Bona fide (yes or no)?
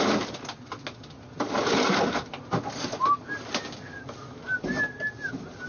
yes